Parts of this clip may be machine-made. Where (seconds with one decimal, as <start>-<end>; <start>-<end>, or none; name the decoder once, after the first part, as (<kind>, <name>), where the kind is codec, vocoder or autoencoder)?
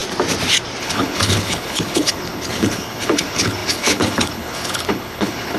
0.8-5.6 (codec, HILCodec)